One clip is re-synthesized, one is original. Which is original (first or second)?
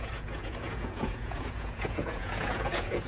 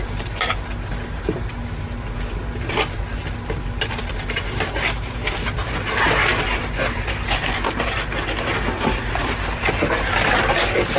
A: second